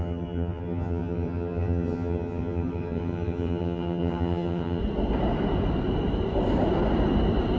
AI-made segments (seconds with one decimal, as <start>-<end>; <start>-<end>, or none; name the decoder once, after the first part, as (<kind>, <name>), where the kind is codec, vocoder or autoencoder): 0.0-4.8 (vocoder, HiFi-GAN)